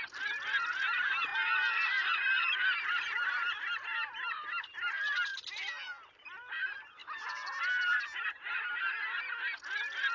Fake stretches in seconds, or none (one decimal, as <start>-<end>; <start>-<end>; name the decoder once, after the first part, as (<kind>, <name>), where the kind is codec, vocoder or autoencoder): 1.3-3.6 (vocoder, BigVGAN v2); 5.3-6.5; 7.0-9.2